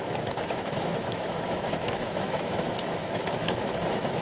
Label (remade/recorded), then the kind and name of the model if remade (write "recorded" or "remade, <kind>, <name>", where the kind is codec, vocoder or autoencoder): remade, autoencoder, DAC-VAE